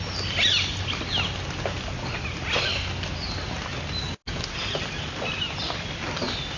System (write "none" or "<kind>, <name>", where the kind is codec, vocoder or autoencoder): none